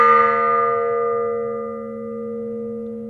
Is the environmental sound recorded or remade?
recorded